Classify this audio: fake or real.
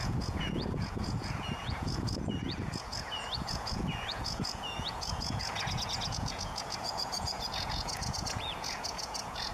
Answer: fake